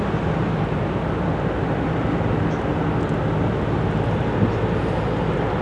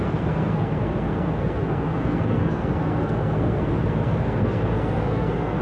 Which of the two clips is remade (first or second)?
second